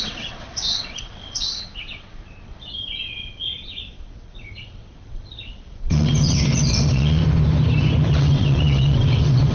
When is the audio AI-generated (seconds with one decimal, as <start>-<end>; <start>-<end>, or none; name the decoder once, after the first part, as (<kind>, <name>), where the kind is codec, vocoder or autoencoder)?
0.0-7.2 (vocoder, WaveNeXt); 8.1-9.5